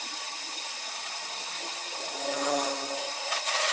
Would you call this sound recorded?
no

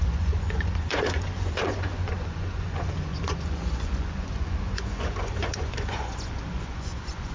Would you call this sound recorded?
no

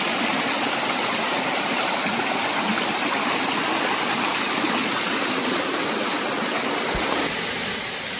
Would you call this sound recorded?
yes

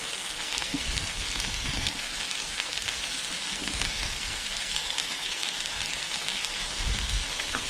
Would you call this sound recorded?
no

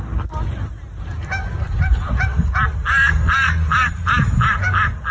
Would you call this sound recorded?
yes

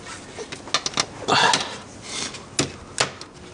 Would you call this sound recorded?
yes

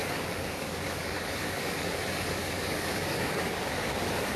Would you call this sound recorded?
no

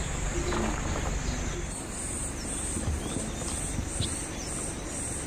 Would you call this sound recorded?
yes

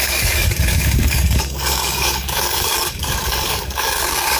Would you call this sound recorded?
no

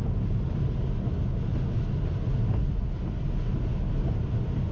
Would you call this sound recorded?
yes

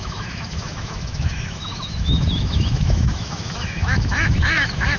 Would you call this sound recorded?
no